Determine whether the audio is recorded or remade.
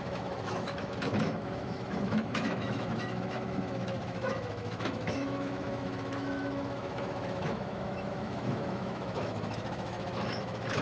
remade